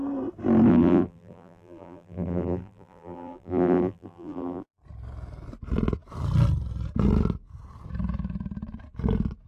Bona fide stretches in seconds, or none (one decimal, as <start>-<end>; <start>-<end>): 0.0-0.7; 4.8-9.5